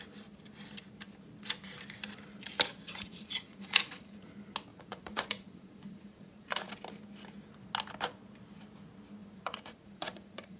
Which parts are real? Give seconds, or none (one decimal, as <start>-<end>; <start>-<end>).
0.0-2.7; 4.3-4.7; 6.7-9.2